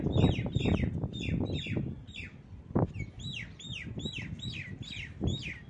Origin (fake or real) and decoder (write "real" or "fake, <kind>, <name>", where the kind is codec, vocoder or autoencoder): real